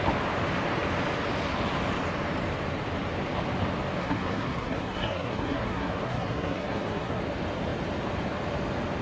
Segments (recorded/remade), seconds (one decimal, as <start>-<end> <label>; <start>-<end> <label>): 0.0-4.0 recorded; 4.0-7.2 remade; 7.2-9.0 recorded